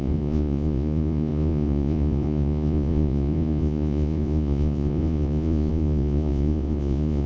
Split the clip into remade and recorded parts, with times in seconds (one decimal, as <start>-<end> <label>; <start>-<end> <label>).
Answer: 0.0-7.3 remade